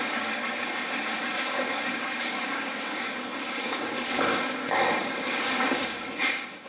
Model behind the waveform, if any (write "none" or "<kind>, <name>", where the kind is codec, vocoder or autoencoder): codec, DAC